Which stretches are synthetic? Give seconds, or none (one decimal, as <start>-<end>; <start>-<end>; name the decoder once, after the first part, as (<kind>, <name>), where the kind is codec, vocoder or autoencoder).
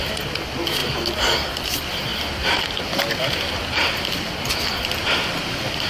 none